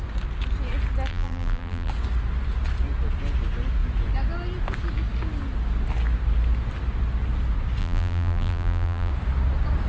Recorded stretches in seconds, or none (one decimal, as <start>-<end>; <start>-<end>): 0.0-1.1; 1.9-7.8; 9.1-9.9